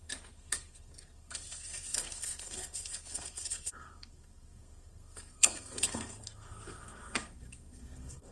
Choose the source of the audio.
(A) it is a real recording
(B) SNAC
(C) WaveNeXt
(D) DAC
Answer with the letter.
B